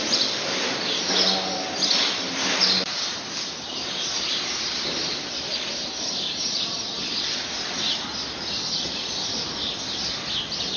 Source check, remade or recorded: recorded